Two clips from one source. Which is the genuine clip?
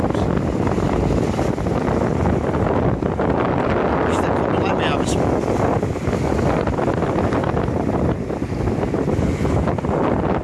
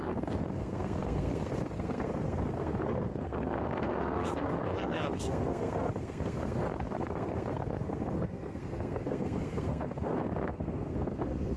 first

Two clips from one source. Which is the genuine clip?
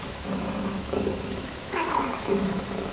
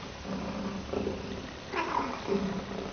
second